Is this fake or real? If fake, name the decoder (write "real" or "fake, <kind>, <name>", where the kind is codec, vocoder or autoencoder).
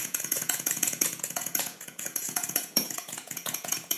fake, vocoder, Vocos